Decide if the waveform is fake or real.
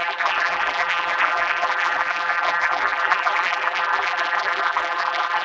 fake